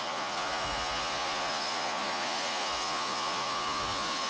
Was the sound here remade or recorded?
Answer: remade